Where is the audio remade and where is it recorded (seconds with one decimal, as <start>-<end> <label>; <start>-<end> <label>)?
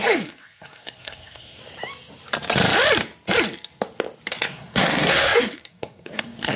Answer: 0.0-1.6 remade; 1.6-4.3 recorded; 4.3-6.6 remade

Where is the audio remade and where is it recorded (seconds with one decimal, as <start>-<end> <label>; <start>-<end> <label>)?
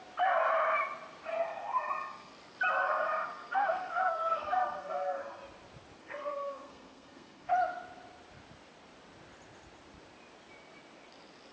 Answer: 0.0-1.3 recorded; 1.3-2.3 remade; 2.3-2.8 recorded; 2.8-5.4 remade; 5.4-6.0 recorded; 6.0-7.5 remade; 7.5-11.5 recorded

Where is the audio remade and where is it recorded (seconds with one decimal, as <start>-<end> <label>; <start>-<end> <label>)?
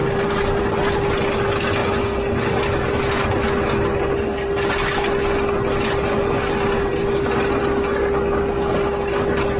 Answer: 0.0-9.6 recorded